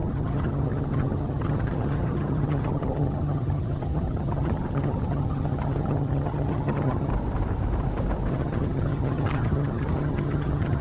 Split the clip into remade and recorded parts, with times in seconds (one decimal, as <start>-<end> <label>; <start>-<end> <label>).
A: 0.0-7.1 remade; 7.1-8.3 recorded; 8.3-10.8 remade